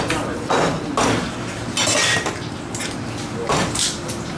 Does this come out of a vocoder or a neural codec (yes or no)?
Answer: no